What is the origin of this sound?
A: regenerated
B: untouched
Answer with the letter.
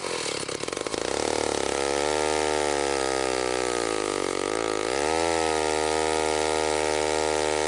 B